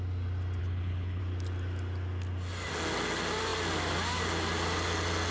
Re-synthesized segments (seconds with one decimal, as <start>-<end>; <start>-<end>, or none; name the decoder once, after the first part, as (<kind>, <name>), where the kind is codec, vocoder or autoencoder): 0.6-1.2 (codec, HILCodec)